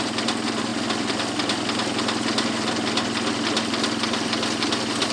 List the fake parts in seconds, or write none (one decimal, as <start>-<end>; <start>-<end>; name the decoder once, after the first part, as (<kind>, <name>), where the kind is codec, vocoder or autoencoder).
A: none